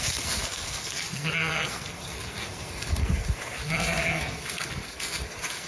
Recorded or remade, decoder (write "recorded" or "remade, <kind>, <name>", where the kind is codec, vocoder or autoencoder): remade, codec, SNAC